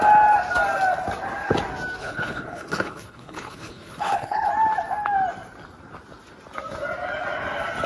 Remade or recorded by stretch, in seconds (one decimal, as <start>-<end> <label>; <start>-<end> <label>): 0.0-2.0 recorded; 2.0-4.5 remade; 4.5-7.9 recorded